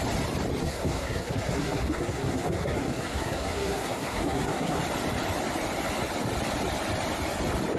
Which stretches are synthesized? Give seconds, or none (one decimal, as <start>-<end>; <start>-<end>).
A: 0.6-4.8